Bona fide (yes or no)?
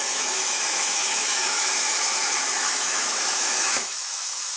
no